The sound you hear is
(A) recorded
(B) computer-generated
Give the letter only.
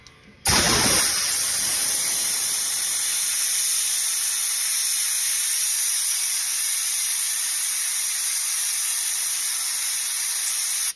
A